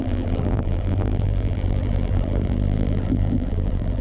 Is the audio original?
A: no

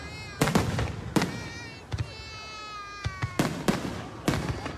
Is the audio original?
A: yes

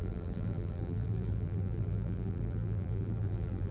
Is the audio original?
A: no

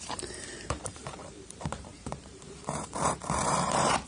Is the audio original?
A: no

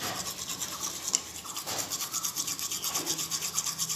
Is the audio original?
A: yes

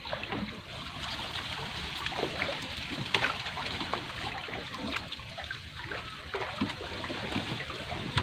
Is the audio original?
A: yes